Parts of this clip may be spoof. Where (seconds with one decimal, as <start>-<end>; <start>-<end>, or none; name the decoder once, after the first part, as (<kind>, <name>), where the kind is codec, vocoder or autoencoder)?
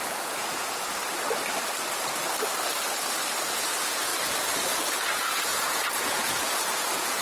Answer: 0.0-1.0 (vocoder, Vocos); 3.5-4.1; 5.1-7.2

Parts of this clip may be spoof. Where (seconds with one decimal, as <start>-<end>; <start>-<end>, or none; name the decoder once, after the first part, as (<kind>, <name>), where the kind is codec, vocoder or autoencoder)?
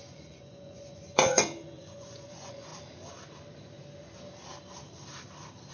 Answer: 0.0-2.7 (vocoder, Vocos)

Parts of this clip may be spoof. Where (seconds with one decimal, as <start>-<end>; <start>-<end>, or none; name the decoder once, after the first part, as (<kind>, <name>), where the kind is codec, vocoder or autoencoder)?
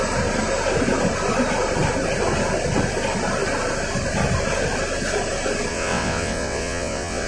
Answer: 5.7-7.3 (vocoder, WaveNeXt)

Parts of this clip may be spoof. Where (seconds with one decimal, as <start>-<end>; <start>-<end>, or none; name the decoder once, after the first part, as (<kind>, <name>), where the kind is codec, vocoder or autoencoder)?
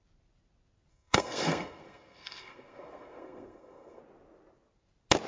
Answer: 0.9-4.0 (codec, SNAC)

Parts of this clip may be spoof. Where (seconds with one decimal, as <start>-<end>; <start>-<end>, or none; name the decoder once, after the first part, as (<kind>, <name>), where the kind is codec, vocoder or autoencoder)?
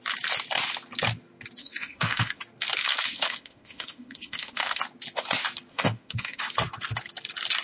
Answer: 1.6-2.4 (autoencoder, DAC-VAE); 2.8-4.8; 5.7-6.4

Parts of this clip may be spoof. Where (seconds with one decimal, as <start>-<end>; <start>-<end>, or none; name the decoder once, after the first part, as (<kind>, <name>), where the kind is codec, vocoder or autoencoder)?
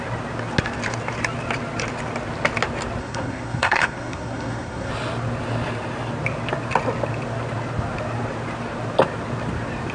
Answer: 3.0-4.9 (codec, SNAC)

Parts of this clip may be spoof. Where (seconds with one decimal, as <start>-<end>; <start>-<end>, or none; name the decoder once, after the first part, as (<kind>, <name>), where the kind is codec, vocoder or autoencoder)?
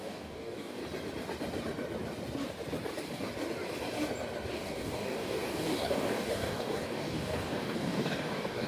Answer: 0.0-0.8 (codec, DAC); 4.5-8.7